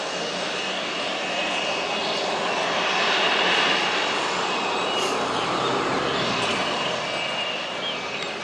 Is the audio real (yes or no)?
yes